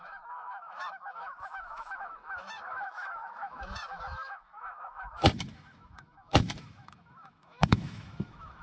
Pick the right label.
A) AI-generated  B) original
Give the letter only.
A